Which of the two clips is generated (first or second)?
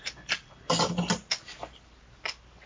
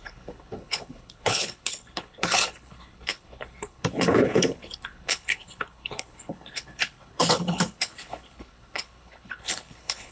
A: second